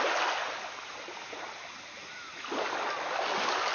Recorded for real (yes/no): yes